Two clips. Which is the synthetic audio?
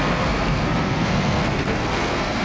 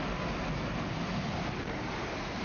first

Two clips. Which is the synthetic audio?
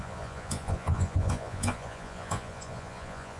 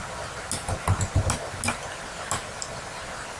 first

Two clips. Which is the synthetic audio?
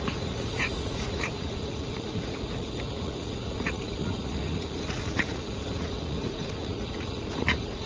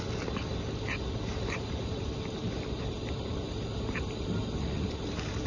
first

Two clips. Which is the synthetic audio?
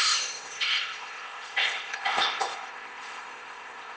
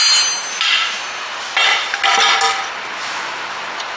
first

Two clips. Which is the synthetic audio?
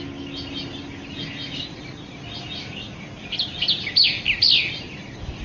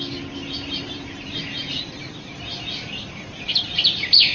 second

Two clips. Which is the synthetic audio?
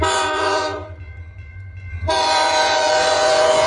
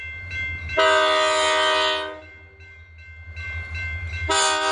first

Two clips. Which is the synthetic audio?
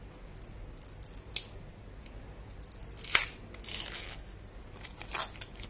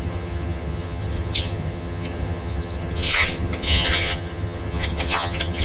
second